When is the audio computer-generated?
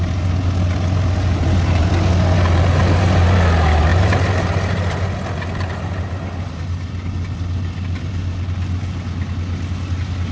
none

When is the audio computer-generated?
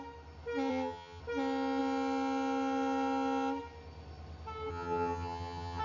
0.7-1.2; 4.7-5.8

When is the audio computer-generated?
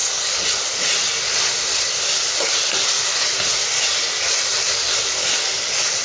none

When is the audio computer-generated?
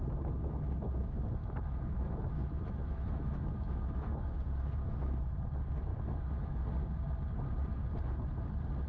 1.4-5.3; 5.9-6.6